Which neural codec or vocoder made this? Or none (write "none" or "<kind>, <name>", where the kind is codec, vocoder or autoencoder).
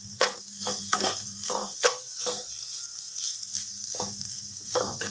codec, SNAC